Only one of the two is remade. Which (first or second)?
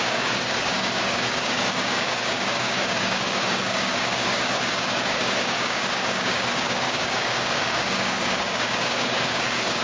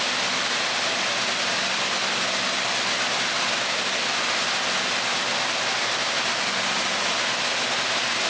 first